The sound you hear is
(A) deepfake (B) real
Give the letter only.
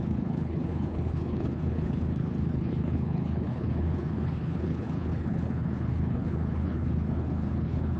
A